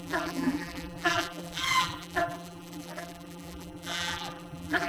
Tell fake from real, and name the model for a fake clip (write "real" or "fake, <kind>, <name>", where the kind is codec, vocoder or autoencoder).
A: fake, vocoder, BigVGAN v2